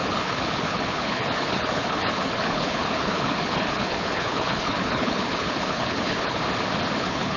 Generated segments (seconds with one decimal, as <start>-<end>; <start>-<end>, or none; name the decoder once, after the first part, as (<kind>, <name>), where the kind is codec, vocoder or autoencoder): 0.0-6.4 (codec, HILCodec); 7.0-7.4